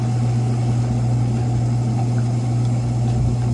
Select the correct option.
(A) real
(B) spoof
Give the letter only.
A